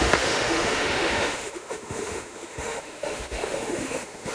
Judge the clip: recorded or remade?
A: remade